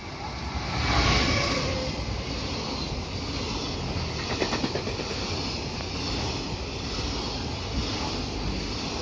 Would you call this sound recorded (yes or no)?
yes